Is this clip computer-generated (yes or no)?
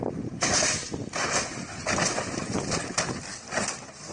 no